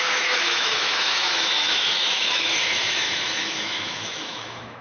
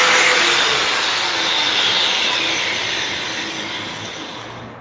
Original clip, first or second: second